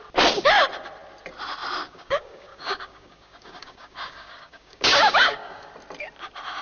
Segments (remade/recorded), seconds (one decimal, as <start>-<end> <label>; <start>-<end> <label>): 0.0-1.8 recorded; 1.8-5.7 remade; 5.7-6.6 recorded

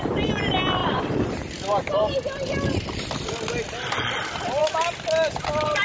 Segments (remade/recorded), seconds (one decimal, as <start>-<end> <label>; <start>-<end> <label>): 0.0-5.8 recorded

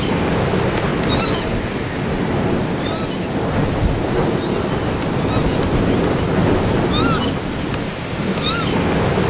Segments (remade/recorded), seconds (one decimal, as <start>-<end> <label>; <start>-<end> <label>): 0.0-9.3 recorded

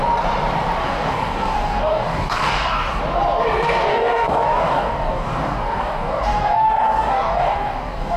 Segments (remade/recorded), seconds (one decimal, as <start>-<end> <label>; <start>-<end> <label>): 0.0-0.8 recorded; 0.8-3.0 remade; 3.0-3.9 recorded; 3.9-8.2 remade

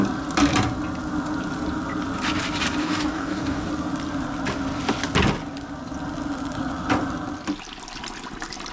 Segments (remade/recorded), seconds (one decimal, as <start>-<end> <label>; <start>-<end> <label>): 0.0-2.8 recorded; 2.8-3.7 remade; 3.7-8.7 recorded

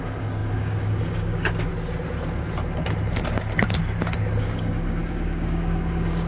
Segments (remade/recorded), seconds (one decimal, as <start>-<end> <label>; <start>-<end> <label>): 0.0-1.7 remade; 1.7-4.4 recorded; 4.4-6.3 remade